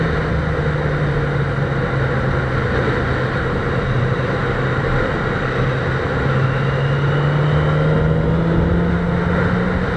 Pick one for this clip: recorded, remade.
recorded